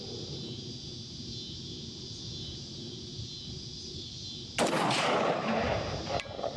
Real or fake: real